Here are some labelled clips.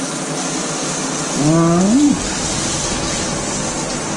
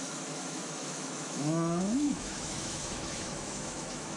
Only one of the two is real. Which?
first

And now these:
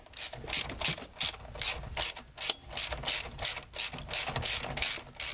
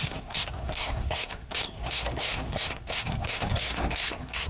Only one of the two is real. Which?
first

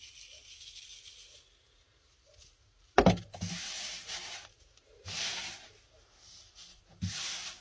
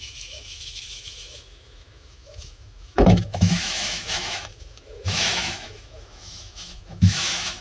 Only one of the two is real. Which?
first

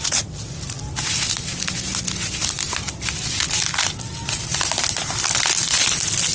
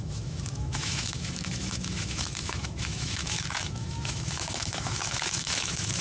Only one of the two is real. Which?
first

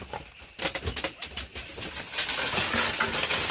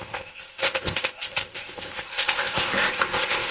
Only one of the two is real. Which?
first